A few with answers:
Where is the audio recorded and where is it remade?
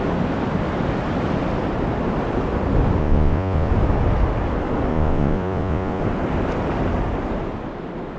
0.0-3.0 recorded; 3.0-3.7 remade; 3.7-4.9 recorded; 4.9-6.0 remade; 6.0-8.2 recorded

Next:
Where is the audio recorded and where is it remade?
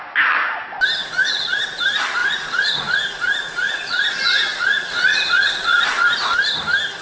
0.0-1.0 recorded; 1.0-1.8 remade; 1.8-2.2 recorded; 2.2-6.0 remade; 6.0-7.0 recorded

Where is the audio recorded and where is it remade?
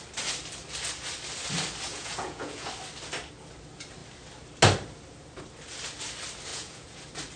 0.0-1.9 recorded; 1.9-2.7 remade; 2.7-6.5 recorded; 6.5-7.0 remade; 7.0-7.4 recorded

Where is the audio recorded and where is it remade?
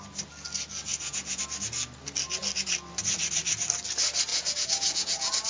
0.0-0.9 recorded; 0.9-1.4 remade; 1.4-4.3 recorded; 4.3-5.5 remade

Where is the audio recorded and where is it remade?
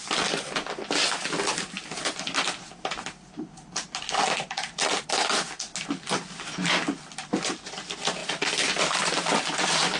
0.0-10.0 recorded